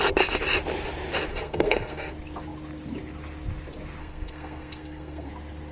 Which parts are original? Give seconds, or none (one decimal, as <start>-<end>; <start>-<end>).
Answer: 0.0-1.3; 2.1-4.0; 5.3-5.7